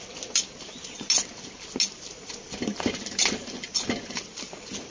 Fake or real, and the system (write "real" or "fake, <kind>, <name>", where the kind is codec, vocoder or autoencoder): real